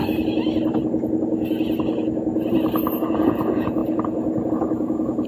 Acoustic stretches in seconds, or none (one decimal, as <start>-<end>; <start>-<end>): 0.0-3.1; 3.8-4.5